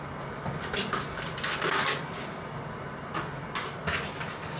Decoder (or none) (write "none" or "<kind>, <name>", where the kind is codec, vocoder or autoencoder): none